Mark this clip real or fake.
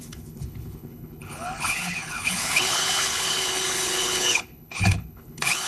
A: fake